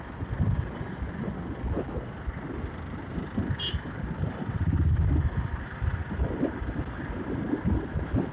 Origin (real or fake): real